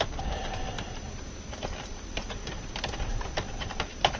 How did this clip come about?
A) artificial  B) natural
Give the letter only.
B